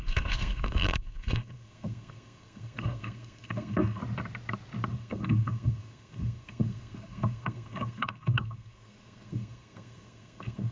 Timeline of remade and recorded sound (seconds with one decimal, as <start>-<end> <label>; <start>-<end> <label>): 0.0-4.0 remade; 4.0-4.9 recorded; 4.9-10.7 remade